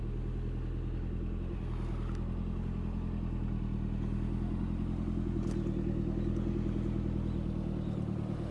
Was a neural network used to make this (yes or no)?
no